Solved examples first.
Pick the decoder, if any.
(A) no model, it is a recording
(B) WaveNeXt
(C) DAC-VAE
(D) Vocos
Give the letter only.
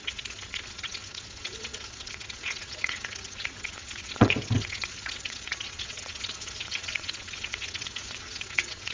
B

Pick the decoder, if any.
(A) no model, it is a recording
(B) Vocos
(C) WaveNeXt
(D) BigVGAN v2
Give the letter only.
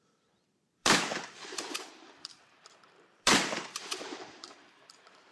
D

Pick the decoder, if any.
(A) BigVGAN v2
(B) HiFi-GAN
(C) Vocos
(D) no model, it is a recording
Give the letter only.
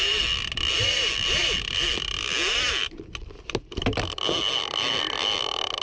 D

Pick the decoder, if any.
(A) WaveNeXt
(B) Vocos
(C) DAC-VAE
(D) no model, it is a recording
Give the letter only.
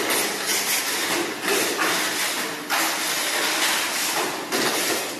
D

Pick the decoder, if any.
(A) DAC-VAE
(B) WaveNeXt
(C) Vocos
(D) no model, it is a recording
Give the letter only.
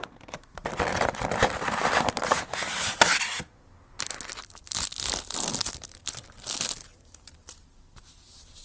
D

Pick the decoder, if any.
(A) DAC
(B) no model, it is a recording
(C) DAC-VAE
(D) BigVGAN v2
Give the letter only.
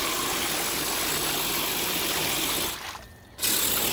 B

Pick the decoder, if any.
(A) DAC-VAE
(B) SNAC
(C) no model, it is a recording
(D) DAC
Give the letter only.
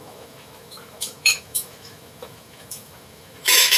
A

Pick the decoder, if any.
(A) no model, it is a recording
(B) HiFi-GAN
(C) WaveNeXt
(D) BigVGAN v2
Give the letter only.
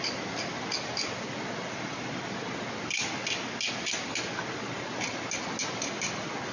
A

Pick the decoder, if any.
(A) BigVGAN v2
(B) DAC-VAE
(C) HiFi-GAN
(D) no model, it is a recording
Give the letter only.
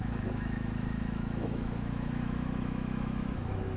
B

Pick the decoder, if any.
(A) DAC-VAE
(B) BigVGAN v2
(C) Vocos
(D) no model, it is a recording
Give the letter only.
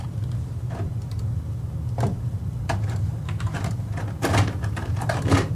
D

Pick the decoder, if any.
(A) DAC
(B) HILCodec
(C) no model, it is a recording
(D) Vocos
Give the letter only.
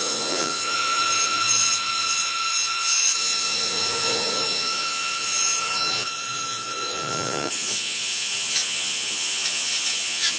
D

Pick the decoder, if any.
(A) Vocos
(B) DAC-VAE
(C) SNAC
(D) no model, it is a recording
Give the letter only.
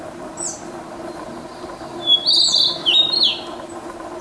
D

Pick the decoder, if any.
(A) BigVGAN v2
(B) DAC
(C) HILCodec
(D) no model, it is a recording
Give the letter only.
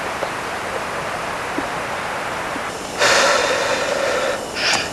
D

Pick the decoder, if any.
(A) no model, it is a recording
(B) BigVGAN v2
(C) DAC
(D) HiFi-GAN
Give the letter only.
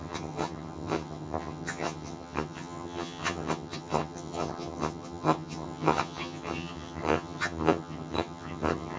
D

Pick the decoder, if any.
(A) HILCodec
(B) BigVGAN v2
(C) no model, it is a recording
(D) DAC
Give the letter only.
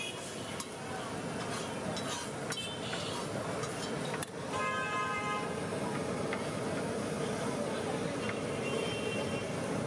C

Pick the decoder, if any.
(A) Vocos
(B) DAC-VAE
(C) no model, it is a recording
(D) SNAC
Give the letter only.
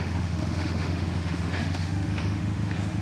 B